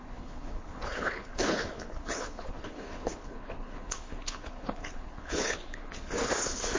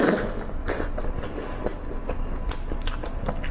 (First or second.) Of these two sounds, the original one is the second